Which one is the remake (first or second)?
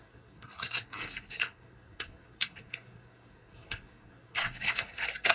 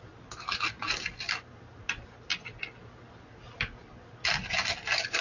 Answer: first